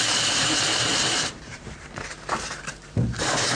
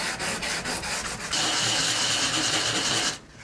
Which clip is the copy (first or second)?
first